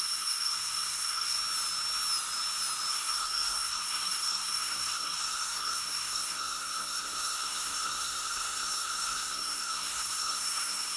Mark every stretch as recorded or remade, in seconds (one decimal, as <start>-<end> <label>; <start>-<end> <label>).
0.0-1.4 remade; 1.4-2.9 recorded; 2.9-11.0 remade